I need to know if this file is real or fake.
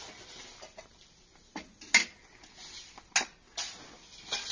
real